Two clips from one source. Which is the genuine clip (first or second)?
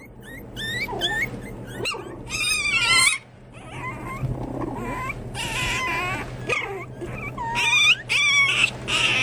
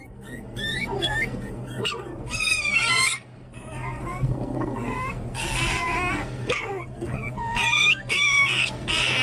first